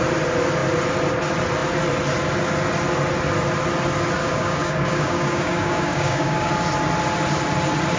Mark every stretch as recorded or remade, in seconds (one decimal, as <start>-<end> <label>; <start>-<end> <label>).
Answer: 0.0-4.2 recorded; 4.2-6.5 remade; 6.5-8.0 recorded